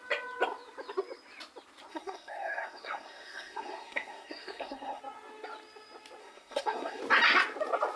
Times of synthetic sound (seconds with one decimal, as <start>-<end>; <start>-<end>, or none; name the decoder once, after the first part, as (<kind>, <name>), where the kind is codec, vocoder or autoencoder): 1.9-5.0 (codec, SNAC); 6.2-7.0